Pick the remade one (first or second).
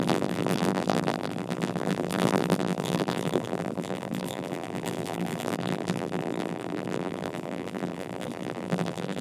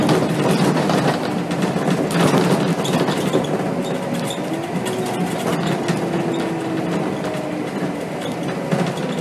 first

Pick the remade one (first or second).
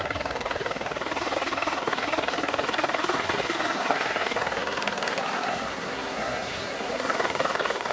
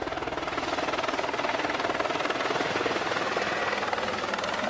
first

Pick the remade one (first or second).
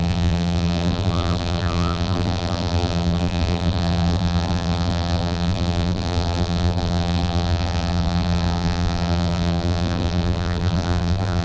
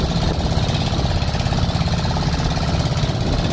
first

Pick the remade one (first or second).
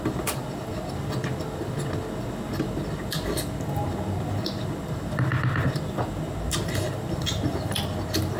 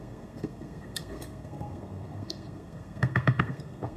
second